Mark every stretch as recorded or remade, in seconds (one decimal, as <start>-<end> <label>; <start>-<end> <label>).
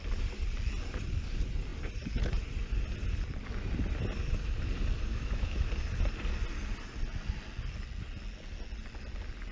0.0-5.1 recorded; 5.1-5.7 remade; 5.7-9.5 recorded